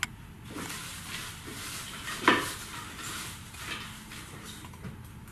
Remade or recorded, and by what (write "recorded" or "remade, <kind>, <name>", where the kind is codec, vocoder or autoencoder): recorded